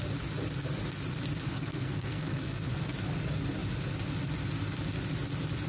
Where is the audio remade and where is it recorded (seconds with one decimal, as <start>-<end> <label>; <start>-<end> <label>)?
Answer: 0.0-1.5 recorded; 1.5-2.7 remade; 2.7-5.7 recorded